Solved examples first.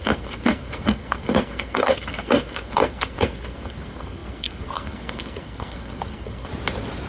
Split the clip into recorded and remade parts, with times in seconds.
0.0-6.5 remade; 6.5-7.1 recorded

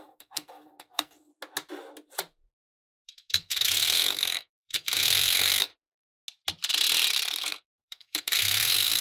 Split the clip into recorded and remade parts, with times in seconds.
0.0-1.3 remade; 1.3-2.5 recorded; 2.5-5.7 remade; 5.7-7.4 recorded; 7.4-9.0 remade

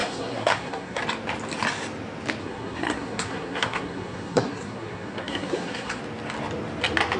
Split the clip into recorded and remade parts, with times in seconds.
0.0-1.0 remade; 1.0-2.4 recorded; 2.4-6.0 remade; 6.0-7.2 recorded